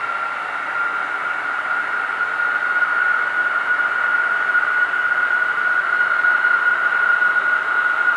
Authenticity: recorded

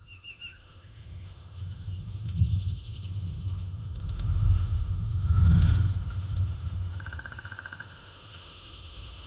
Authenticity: remade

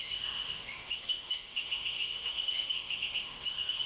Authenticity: remade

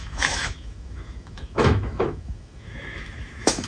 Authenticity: remade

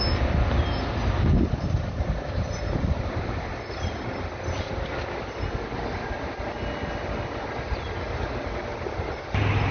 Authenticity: recorded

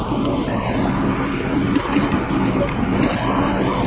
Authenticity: recorded